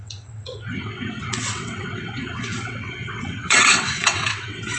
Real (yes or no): no